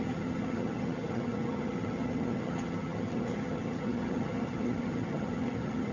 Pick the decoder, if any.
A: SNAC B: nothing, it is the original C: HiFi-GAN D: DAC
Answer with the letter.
C